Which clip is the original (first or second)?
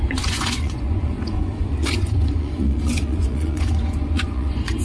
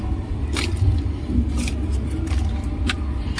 second